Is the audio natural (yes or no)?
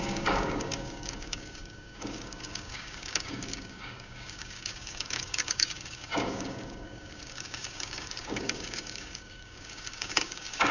no